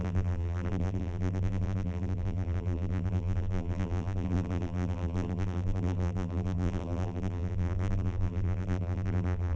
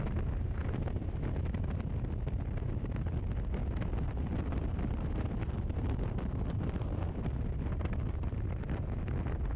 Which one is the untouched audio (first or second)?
second